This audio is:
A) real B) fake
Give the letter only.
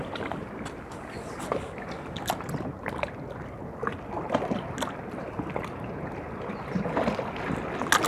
A